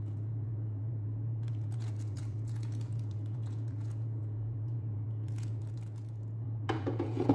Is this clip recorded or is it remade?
remade